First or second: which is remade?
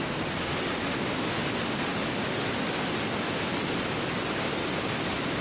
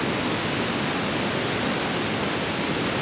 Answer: second